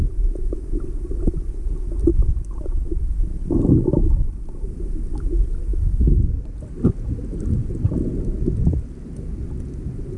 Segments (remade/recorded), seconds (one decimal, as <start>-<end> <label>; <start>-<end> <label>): 0.0-10.2 recorded

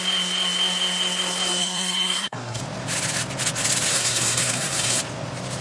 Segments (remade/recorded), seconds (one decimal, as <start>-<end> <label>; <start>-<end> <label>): 0.0-1.6 recorded; 1.6-2.6 remade; 2.6-3.9 recorded; 3.9-5.0 remade; 5.0-5.6 recorded